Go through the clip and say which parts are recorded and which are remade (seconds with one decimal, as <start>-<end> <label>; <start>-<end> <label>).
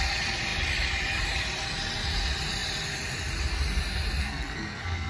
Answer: 0.0-4.2 recorded; 4.2-5.1 remade